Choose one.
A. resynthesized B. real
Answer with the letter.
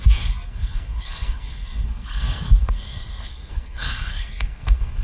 A